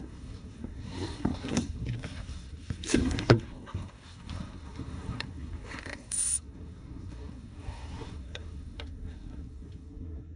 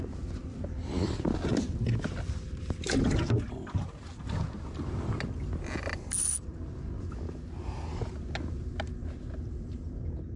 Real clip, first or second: second